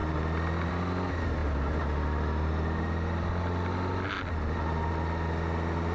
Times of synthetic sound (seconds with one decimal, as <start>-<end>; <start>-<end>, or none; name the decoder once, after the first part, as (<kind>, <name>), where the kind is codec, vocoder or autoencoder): none